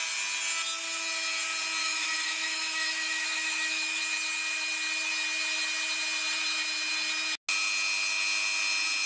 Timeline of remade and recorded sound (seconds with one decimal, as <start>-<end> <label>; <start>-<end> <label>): 0.0-1.8 recorded; 1.8-4.0 remade; 4.0-9.1 recorded